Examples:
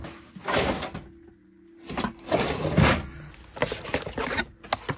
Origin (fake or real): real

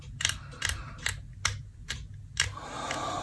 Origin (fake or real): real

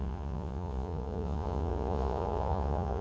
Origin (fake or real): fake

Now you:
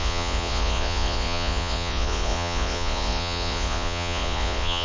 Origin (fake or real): fake